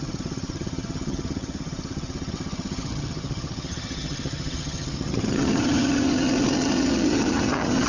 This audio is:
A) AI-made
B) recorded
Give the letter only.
A